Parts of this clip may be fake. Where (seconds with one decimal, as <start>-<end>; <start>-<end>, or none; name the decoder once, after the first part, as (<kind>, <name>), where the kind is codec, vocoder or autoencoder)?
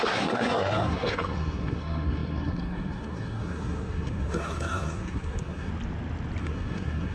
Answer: 0.0-5.7 (codec, SNAC); 6.4-7.1